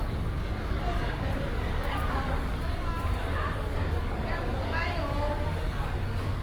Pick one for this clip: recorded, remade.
remade